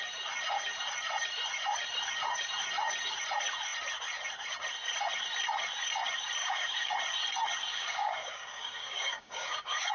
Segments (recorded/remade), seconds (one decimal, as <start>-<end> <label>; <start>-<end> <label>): 0.0-6.4 recorded; 6.4-6.9 remade; 6.9-7.7 recorded; 7.7-9.9 remade